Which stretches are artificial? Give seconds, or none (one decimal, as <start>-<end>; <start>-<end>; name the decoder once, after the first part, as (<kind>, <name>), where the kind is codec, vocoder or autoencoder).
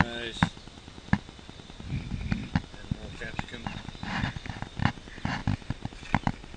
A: none